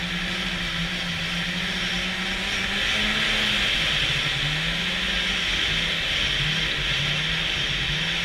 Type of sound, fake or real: real